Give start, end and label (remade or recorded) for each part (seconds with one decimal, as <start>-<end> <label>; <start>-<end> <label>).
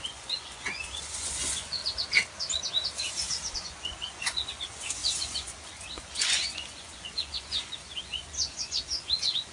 0.0-1.8 remade; 1.8-3.5 recorded; 3.5-9.5 remade